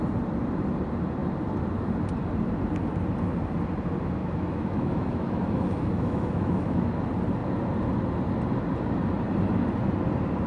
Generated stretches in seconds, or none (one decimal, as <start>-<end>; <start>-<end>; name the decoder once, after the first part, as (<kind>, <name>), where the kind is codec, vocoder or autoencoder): 4.2-6.9 (autoencoder, DAC-VAE)